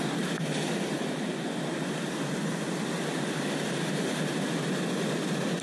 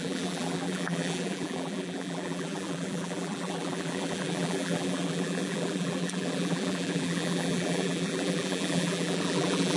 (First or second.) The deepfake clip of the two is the second